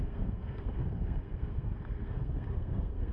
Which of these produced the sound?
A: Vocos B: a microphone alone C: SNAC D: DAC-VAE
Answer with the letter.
C